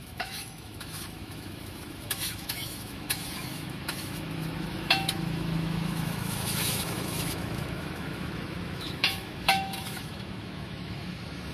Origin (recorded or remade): remade